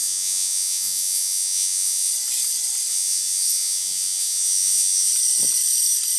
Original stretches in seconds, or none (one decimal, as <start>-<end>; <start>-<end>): 2.1-2.9; 5.1-6.2